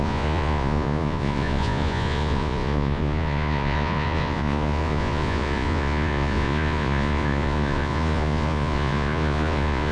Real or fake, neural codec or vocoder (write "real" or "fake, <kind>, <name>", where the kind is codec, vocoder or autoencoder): fake, vocoder, Vocos